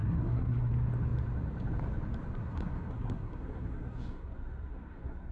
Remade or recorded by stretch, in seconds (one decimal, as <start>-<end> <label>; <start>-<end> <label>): 0.0-0.7 remade; 0.7-2.4 recorded; 2.4-5.3 remade